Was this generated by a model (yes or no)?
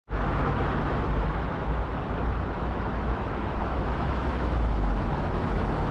yes